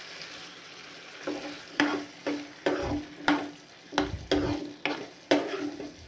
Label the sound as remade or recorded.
recorded